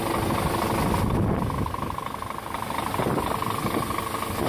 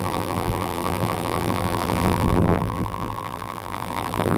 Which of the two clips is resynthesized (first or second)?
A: second